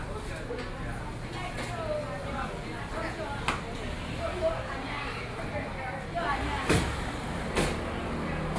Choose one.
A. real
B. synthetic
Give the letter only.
A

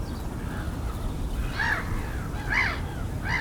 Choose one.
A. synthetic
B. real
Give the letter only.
B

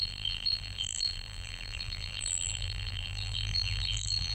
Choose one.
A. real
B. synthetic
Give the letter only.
B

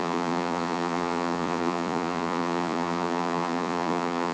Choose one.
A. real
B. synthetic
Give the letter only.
B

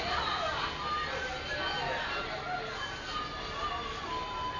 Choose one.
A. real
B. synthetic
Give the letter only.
A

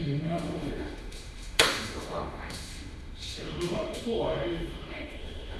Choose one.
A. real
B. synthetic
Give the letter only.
B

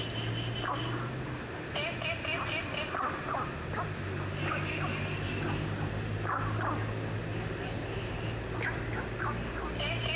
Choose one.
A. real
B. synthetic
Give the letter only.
A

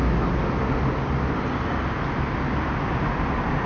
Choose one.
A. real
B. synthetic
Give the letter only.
A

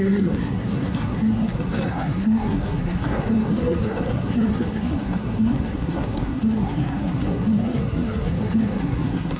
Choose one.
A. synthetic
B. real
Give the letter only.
A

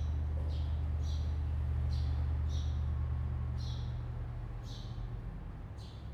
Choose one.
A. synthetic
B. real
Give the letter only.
B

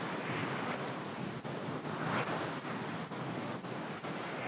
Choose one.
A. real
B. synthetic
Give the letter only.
A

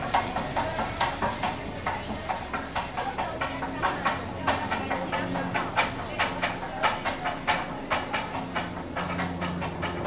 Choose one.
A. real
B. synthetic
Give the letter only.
A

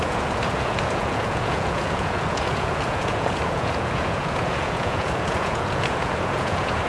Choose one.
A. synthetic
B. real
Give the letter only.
A